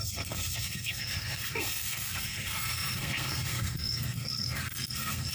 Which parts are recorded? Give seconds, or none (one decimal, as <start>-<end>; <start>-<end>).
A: none

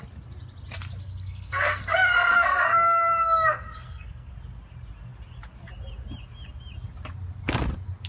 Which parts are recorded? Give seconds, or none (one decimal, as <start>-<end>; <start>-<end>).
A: 0.0-1.0; 4.3-8.1